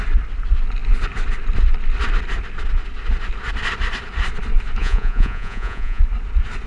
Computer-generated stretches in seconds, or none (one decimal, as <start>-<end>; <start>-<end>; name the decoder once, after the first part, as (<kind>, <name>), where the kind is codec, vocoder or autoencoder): 4.8-6.0 (vocoder, Vocos)